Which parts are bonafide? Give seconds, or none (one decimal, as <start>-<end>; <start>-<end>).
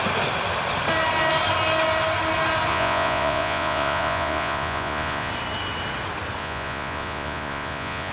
0.0-2.7; 5.3-6.4